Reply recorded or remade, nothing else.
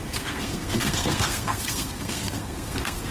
remade